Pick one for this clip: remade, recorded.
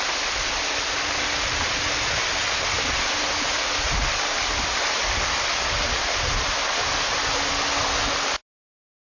recorded